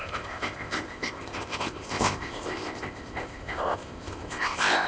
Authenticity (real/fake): fake